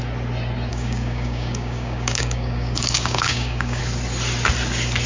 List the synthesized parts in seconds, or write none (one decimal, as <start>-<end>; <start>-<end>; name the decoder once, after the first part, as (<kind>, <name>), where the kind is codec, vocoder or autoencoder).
0.7-3.8 (codec, DAC)